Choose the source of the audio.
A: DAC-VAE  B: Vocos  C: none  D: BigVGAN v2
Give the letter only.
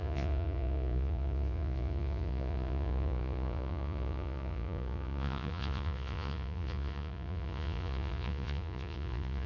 B